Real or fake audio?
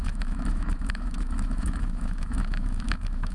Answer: fake